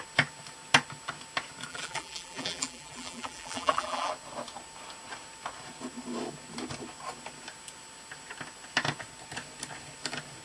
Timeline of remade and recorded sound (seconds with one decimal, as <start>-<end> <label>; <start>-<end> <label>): 0.0-1.7 recorded; 1.7-4.1 remade; 4.1-10.4 recorded